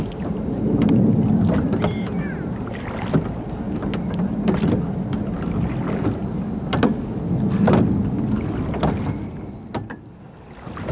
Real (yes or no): yes